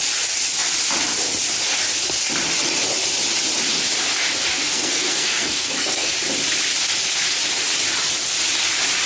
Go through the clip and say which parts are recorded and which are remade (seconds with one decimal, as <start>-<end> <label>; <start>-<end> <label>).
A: 0.0-4.5 recorded; 4.5-6.1 remade; 6.1-9.1 recorded